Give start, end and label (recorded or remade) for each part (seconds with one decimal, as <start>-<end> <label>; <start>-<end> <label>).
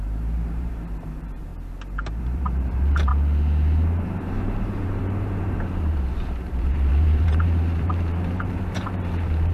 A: 0.0-1.5 remade; 1.5-2.2 recorded; 2.2-3.1 remade; 3.1-4.0 recorded; 4.0-9.5 remade